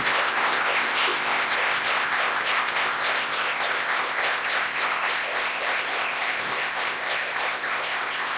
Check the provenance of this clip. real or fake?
fake